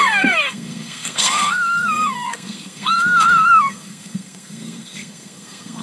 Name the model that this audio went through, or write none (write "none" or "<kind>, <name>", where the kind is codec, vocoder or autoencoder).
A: codec, SNAC